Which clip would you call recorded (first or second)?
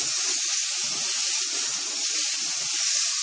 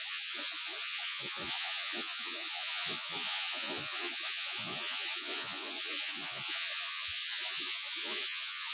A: first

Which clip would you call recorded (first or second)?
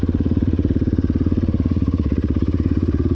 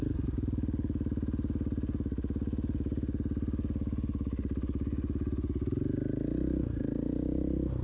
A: second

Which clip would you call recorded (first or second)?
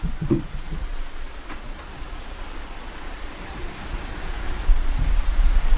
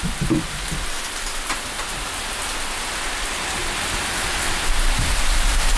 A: second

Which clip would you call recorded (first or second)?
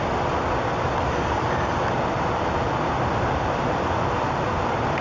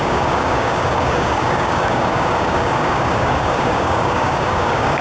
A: first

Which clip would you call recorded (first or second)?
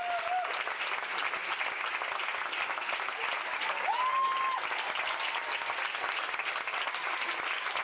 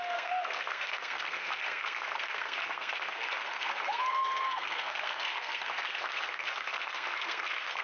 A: first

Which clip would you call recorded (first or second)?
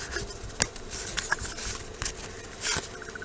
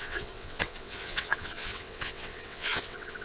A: first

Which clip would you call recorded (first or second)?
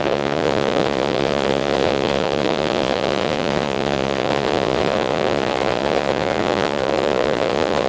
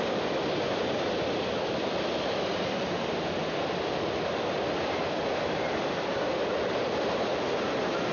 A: second